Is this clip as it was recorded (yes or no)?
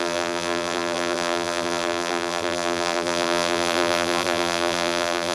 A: no